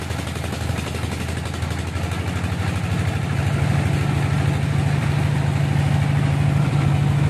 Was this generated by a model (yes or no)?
no